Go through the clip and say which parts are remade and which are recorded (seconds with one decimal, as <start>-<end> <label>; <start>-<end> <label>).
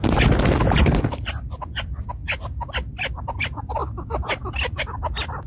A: 0.0-2.2 remade; 2.2-3.1 recorded; 3.1-3.8 remade; 3.8-4.8 recorded; 4.8-5.5 remade